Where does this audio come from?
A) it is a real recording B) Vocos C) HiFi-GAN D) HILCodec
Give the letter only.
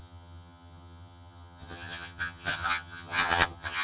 C